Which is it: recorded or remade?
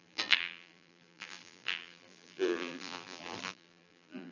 remade